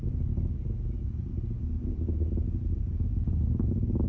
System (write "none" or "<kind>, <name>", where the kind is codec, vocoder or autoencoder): none